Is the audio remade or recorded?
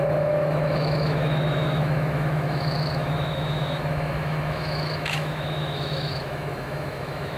remade